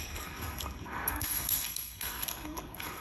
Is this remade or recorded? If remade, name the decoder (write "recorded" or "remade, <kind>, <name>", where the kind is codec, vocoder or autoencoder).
remade, codec, SNAC